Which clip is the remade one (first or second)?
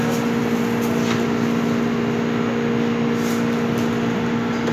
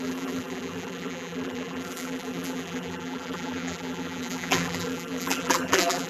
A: second